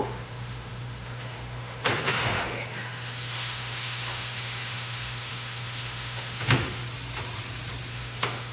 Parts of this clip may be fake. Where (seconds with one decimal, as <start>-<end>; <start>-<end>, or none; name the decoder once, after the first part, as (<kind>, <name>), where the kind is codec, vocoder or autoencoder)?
0.0-6.8 (autoencoder, DAC-VAE); 7.9-8.5